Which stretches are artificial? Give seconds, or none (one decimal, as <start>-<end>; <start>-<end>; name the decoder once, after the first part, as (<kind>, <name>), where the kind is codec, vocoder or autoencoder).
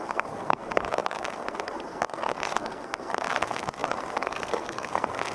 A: 0.0-5.3 (codec, SNAC)